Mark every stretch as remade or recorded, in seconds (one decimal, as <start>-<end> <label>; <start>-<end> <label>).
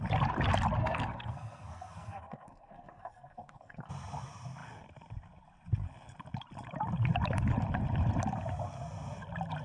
0.0-0.8 recorded; 0.8-3.9 remade; 3.9-9.6 recorded